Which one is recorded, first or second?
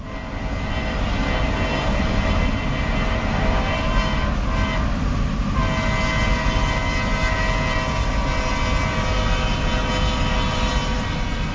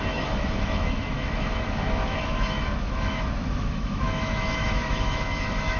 first